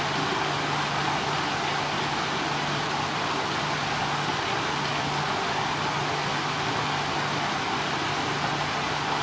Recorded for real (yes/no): yes